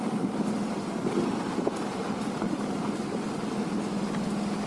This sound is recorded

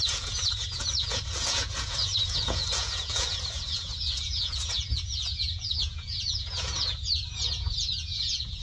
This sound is remade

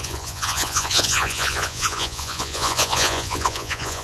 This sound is remade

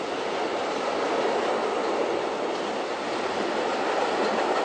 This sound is recorded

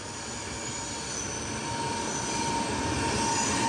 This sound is recorded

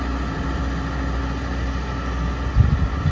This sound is recorded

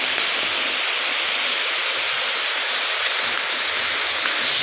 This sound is recorded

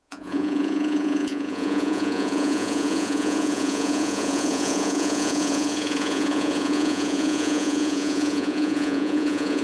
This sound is remade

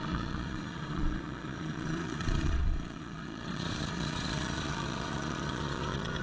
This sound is remade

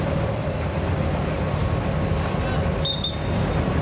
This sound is recorded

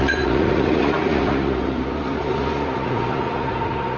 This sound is remade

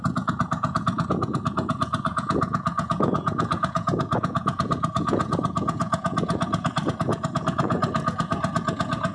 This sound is remade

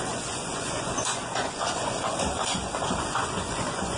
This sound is remade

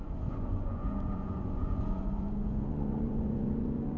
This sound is remade